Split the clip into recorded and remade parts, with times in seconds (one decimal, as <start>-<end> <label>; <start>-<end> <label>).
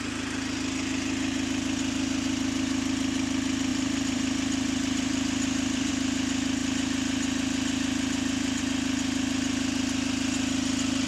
0.0-3.7 recorded; 3.7-5.9 remade; 5.9-11.1 recorded